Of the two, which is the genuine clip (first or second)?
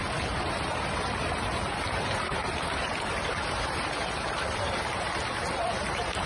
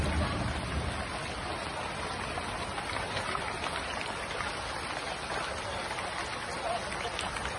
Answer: second